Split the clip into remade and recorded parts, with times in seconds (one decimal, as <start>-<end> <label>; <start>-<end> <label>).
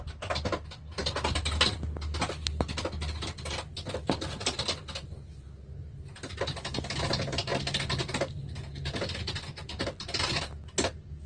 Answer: 0.0-11.3 recorded